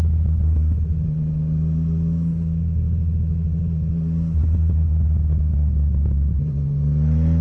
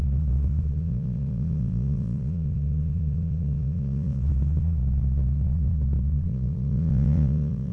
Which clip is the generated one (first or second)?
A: second